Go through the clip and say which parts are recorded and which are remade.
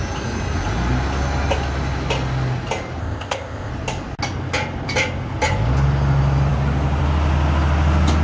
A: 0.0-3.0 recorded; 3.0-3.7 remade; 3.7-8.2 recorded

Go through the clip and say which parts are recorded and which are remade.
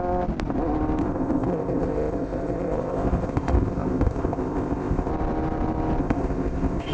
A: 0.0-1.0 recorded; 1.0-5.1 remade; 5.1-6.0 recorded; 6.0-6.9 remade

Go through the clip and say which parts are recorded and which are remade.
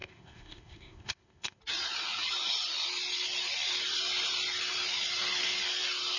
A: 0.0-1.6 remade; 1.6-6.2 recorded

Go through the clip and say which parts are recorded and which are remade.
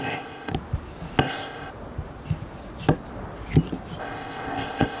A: 0.0-0.5 remade; 0.5-1.2 recorded; 1.2-1.7 remade; 1.7-4.0 recorded; 4.0-5.0 remade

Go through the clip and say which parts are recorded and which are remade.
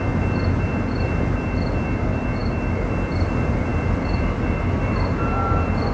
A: 0.0-5.9 recorded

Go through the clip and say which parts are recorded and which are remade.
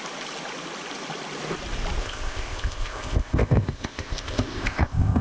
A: 0.0-2.0 recorded; 2.0-5.2 remade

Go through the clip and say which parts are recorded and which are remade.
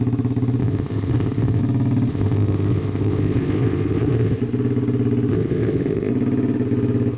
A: 0.0-0.6 recorded; 0.6-1.6 remade; 1.6-2.1 recorded; 2.1-4.4 remade; 4.4-5.3 recorded; 5.3-6.1 remade; 6.1-7.2 recorded